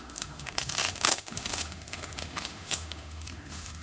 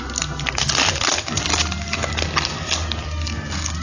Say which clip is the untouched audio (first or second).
second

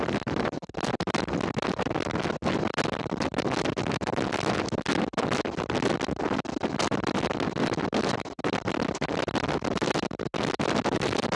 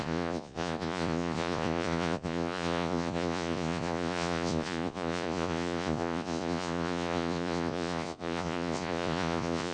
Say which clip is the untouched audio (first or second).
first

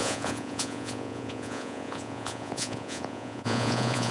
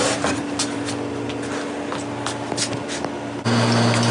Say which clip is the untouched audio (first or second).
second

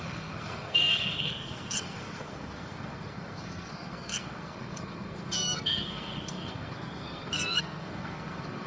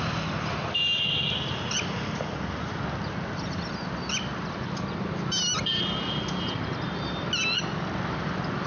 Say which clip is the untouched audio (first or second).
second